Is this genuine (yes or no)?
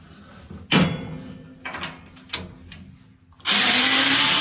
yes